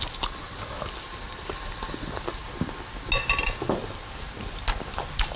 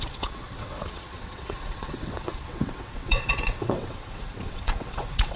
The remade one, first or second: second